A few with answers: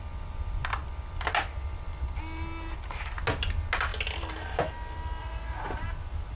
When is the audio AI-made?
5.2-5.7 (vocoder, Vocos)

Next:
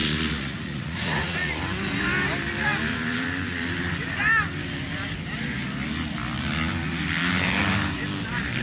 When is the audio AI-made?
0.0-1.6 (vocoder, Vocos)

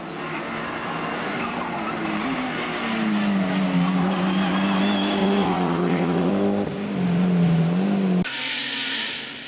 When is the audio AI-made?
5.2-6.3 (vocoder, Vocos)

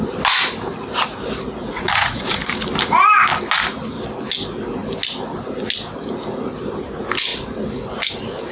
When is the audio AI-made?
1.6-2.3 (vocoder, Vocos)

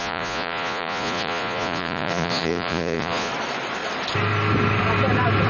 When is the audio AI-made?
0.0-3.3 (vocoder, Vocos)

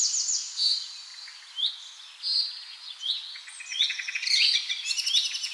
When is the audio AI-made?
2.3-4.9 (vocoder, Vocos)

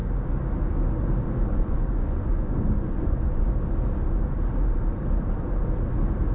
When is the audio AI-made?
1.5-3.5 (vocoder, Vocos)